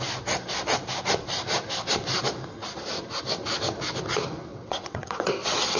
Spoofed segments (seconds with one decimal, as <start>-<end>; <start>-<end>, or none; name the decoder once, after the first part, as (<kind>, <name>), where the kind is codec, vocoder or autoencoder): 4.5-5.3 (vocoder, WaveNeXt)